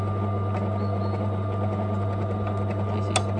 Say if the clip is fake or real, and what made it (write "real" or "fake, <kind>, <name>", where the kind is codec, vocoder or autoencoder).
real